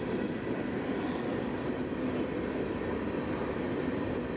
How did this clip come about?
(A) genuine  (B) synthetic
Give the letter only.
A